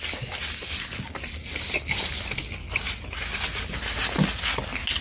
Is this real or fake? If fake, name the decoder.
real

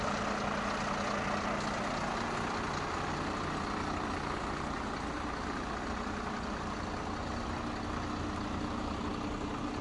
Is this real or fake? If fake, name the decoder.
real